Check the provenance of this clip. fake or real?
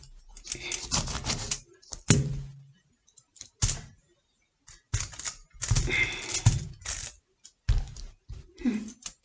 real